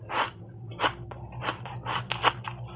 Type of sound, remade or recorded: recorded